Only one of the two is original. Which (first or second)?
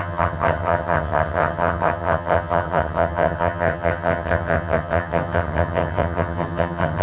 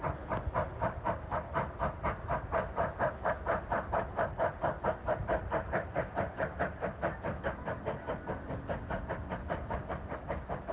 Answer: second